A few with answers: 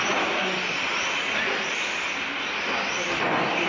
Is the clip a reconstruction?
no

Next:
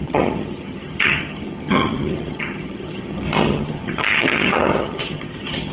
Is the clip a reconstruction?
yes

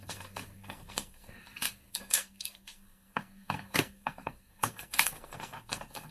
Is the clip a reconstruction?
yes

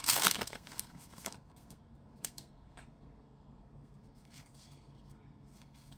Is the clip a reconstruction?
yes